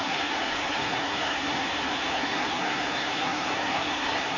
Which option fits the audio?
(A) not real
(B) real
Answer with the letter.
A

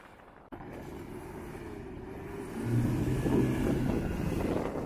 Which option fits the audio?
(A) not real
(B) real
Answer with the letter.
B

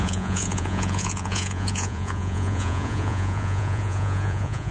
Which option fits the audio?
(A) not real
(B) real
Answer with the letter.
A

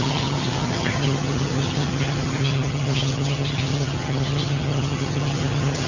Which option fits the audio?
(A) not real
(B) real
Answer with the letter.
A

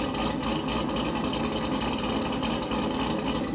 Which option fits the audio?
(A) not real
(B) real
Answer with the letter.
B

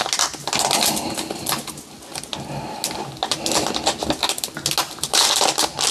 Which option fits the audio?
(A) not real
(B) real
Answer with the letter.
B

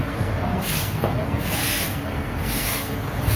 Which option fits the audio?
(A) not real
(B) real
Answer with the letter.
A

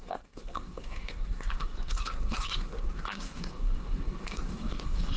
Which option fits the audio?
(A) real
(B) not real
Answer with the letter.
B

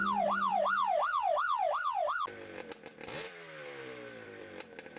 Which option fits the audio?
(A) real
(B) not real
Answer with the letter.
B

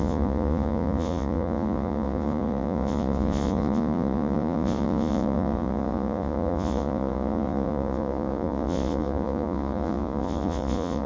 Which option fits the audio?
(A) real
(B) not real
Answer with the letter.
B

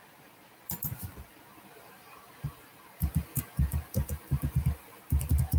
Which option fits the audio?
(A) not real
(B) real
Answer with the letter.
A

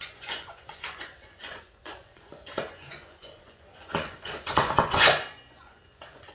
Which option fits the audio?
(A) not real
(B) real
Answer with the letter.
A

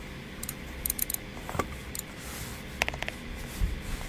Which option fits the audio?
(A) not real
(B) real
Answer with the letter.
A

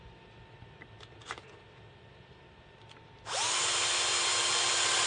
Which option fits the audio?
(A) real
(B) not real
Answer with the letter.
A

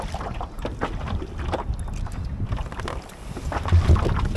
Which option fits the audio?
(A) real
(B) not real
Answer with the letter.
A